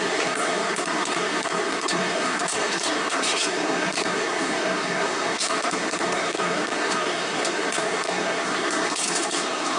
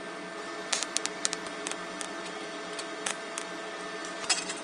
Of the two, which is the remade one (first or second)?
first